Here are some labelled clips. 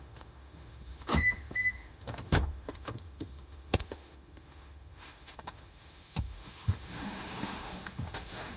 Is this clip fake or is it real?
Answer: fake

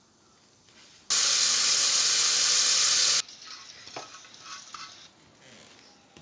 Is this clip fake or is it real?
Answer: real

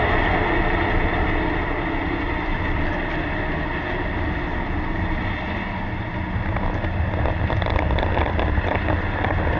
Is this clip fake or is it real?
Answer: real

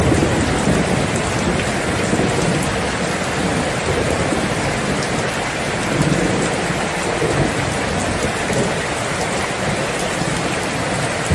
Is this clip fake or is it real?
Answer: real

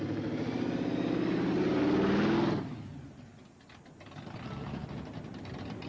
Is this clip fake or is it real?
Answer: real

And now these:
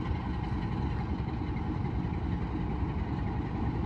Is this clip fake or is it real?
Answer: real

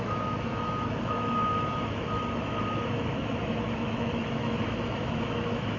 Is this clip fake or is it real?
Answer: fake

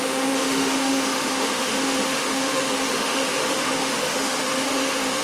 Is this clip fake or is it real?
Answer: fake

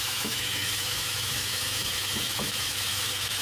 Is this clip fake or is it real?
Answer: fake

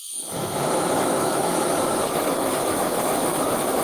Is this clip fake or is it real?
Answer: fake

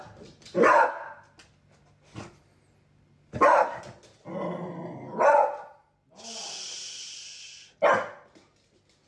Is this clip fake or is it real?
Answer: real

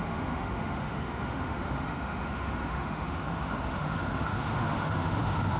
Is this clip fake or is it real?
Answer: fake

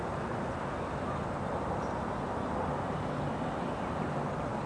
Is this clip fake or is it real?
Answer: real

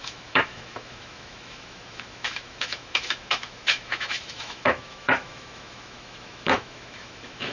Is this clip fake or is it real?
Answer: fake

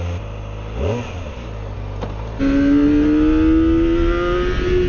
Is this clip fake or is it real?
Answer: real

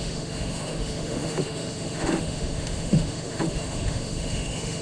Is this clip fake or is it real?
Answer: fake